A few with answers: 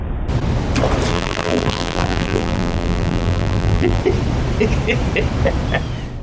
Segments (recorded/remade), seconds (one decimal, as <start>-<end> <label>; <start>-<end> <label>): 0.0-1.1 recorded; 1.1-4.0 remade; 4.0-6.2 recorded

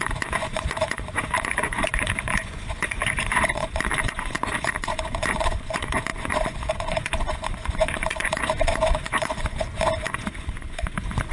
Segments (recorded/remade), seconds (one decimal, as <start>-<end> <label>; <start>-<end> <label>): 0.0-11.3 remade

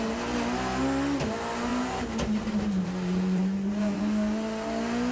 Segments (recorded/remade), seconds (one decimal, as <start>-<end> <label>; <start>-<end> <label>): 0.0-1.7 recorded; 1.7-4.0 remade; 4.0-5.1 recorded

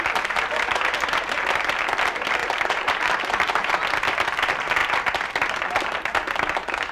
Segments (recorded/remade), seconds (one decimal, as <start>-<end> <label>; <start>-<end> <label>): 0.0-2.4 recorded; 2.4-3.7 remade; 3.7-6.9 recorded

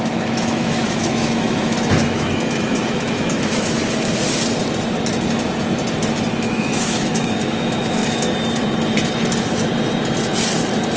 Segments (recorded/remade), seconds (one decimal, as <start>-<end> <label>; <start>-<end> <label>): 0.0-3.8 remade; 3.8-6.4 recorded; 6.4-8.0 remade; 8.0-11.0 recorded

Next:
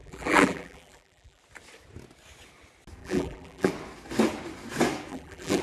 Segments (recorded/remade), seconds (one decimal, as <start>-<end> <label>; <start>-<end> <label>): 0.0-1.4 remade; 1.4-3.0 recorded; 3.0-3.7 remade; 3.7-5.1 recorded; 5.1-5.6 remade

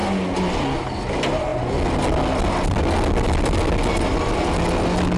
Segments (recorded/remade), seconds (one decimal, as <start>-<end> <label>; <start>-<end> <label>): 0.0-5.2 recorded

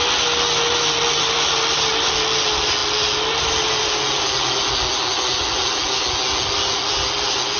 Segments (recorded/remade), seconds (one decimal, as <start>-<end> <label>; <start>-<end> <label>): 0.0-7.6 recorded